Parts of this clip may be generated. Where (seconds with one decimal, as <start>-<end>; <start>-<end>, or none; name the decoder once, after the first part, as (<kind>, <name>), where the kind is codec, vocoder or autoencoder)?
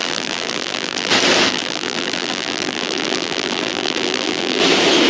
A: 0.0-1.1 (vocoder, BigVGAN v2); 1.5-4.6